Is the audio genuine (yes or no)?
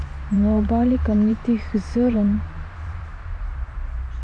no